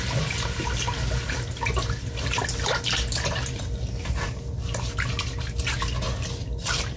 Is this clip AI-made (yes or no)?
no